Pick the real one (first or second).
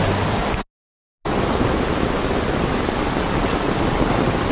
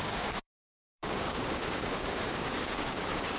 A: first